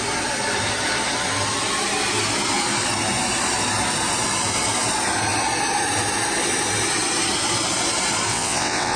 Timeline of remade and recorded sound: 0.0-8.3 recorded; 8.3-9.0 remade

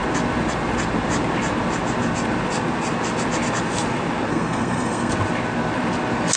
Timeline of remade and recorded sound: 0.0-4.3 recorded; 4.3-5.1 remade; 5.1-6.4 recorded

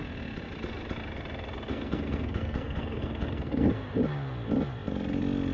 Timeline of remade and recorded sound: 0.0-1.7 recorded; 1.7-4.0 remade; 4.0-5.5 recorded

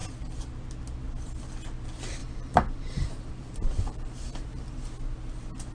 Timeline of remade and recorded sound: 0.0-2.2 recorded; 2.2-4.9 remade; 4.9-5.7 recorded

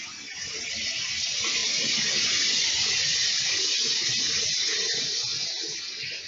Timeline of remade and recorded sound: 0.0-1.6 recorded; 1.6-5.0 remade; 5.0-6.3 recorded

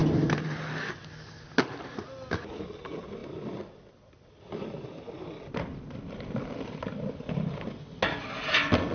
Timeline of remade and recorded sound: 0.0-8.9 recorded